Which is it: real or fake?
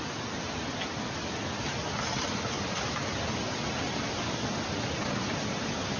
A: real